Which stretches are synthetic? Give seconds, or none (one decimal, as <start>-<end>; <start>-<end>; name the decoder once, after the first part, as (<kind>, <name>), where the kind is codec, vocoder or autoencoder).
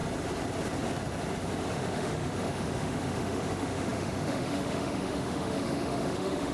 1.7-6.5 (autoencoder, DAC-VAE)